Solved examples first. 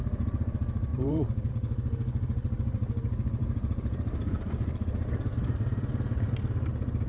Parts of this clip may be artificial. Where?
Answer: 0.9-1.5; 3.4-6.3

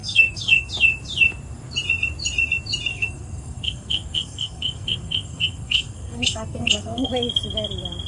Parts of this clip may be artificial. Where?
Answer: 0.0-0.7; 2.9-7.1